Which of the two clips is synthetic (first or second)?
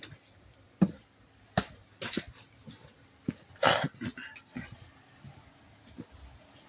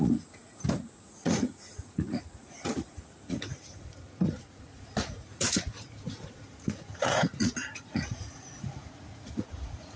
second